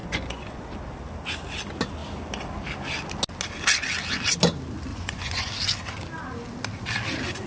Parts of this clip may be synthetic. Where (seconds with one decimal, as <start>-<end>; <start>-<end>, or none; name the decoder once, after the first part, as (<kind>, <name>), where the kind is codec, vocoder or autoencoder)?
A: 0.0-0.6 (vocoder, Vocos); 4.9-5.5